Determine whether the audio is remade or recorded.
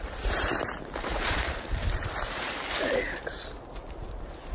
remade